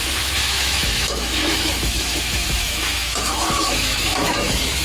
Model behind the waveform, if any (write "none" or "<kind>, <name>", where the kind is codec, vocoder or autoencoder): autoencoder, DAC-VAE